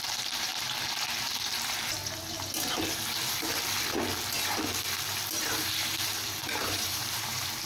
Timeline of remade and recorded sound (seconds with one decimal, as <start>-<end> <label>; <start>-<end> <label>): 0.0-0.5 remade; 0.5-1.2 recorded; 1.2-2.0 remade; 2.0-5.4 recorded; 5.4-7.7 remade